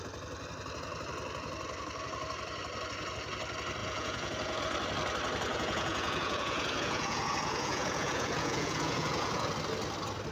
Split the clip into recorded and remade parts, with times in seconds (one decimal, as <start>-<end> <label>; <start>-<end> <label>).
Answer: 0.0-3.8 recorded; 3.8-4.6 remade; 4.6-5.5 recorded; 5.5-9.5 remade; 9.5-10.3 recorded